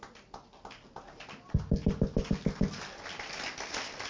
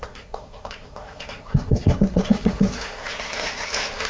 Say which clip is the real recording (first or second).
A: first